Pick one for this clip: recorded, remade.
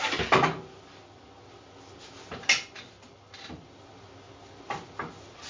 recorded